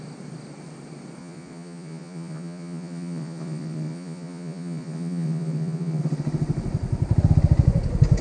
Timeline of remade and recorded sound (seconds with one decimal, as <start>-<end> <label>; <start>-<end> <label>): 0.0-1.2 recorded; 1.2-6.0 remade; 6.0-8.2 recorded